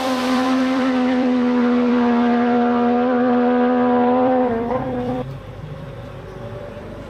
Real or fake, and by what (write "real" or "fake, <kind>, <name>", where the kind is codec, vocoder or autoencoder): fake, vocoder, BigVGAN v2